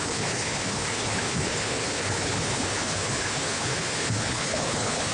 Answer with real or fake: fake